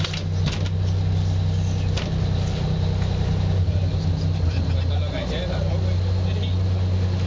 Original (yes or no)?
yes